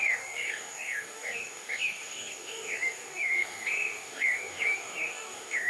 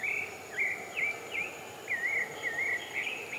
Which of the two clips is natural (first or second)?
second